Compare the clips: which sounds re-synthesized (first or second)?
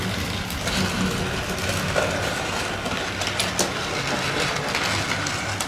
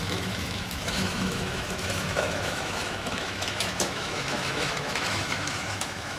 second